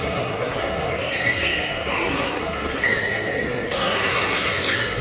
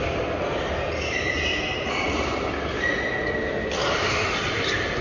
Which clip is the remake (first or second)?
first